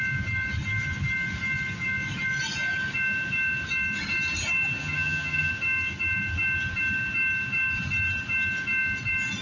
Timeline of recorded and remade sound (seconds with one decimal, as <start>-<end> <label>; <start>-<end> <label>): 0.0-4.8 recorded; 4.8-5.5 remade; 5.5-9.4 recorded